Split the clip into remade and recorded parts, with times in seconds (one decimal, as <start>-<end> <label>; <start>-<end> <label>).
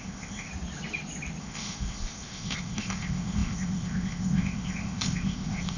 0.0-0.5 remade; 0.5-1.4 recorded; 1.4-5.8 remade